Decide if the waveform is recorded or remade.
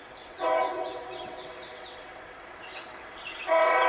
remade